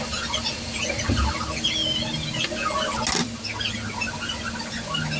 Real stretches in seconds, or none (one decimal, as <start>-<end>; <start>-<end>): 0.0-5.2